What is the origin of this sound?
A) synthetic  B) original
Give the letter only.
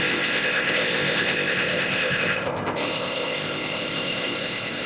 A